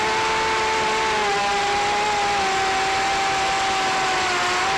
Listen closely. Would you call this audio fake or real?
real